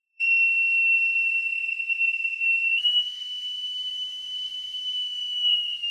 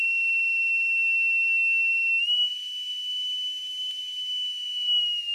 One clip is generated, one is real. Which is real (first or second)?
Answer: second